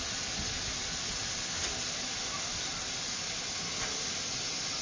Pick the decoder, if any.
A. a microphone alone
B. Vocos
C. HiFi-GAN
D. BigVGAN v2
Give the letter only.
A